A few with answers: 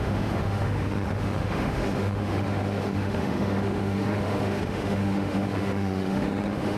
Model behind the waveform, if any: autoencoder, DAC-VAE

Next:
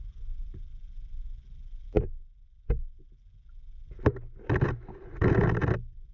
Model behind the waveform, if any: none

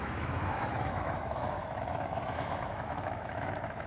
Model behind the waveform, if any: autoencoder, DAC-VAE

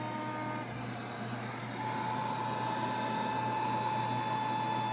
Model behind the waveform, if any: none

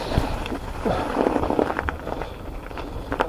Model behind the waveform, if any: none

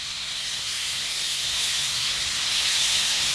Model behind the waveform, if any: codec, SNAC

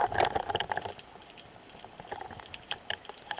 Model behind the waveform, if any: none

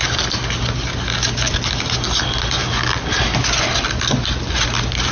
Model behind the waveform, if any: none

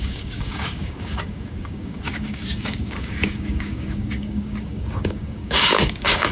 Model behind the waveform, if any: codec, DAC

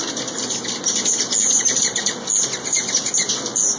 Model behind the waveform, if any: none